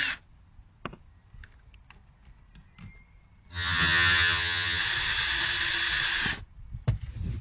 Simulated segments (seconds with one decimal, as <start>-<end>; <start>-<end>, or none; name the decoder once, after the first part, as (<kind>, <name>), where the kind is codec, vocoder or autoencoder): 3.5-4.8 (vocoder, HiFi-GAN)